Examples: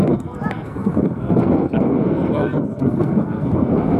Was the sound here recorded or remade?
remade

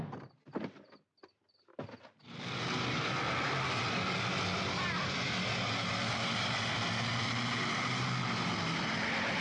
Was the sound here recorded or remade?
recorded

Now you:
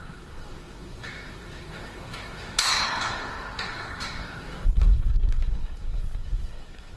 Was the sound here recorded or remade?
remade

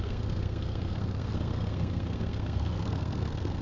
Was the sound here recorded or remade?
remade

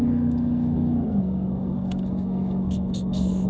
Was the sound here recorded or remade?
remade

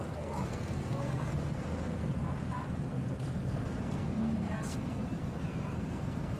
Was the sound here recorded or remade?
remade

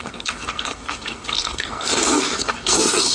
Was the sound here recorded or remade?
remade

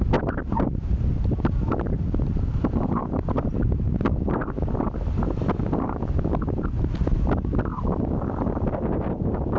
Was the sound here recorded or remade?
recorded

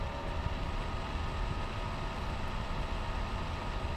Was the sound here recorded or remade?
recorded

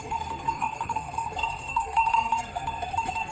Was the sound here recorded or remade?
remade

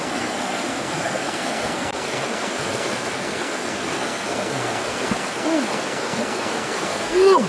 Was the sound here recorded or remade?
remade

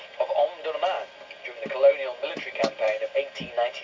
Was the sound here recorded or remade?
recorded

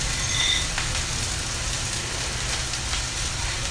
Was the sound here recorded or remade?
recorded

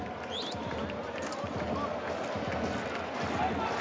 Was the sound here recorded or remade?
recorded